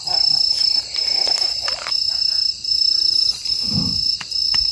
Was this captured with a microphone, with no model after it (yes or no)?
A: no